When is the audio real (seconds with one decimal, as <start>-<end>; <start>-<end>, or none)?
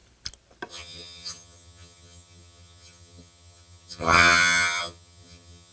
0.0-0.7